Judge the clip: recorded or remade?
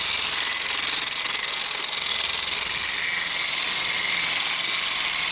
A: recorded